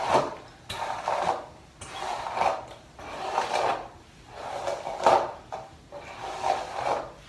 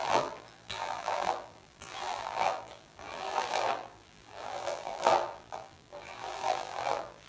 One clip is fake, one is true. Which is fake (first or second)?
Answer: second